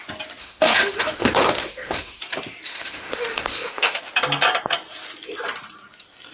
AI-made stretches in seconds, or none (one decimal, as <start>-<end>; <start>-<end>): 0.4-2.2; 2.7-4.0